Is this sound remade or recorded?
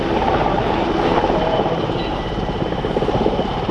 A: remade